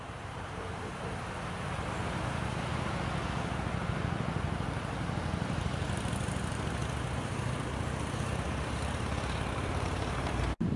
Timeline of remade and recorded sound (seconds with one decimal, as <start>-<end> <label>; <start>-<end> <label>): 0.0-0.9 remade; 0.9-1.8 recorded; 1.8-2.7 remade; 2.7-7.1 recorded; 7.1-10.8 remade